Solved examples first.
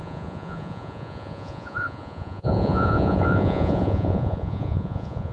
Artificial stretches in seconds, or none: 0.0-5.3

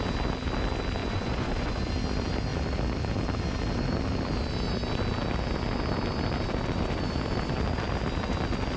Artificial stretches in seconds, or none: 1.0-1.9

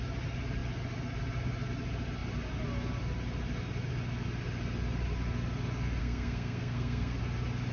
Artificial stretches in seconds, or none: 6.0-7.2

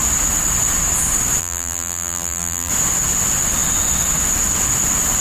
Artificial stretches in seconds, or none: 1.4-2.7